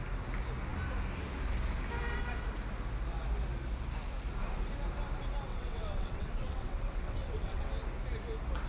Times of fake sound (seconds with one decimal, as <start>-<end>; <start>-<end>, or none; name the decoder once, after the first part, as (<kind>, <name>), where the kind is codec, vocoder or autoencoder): 5.5-7.7 (vocoder, WaveNeXt)